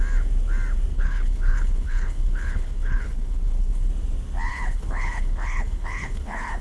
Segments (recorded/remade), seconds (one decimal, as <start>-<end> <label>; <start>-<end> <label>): 0.0-0.9 recorded; 0.9-3.9 remade; 3.9-4.5 recorded; 4.5-6.6 remade